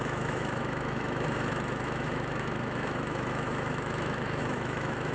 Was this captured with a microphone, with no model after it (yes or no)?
no